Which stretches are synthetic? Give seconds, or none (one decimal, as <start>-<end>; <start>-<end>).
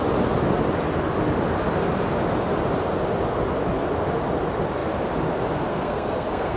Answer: 5.7-6.6